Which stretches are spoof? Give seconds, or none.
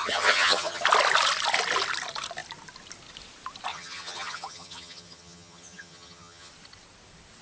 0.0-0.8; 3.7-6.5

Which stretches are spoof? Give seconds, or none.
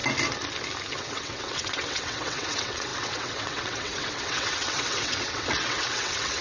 1.0-6.4